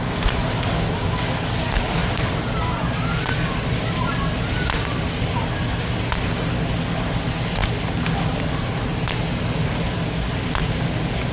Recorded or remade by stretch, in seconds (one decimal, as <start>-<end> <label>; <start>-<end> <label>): 0.0-11.3 recorded